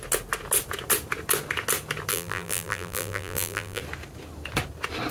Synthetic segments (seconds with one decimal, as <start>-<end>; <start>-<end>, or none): 2.1-3.8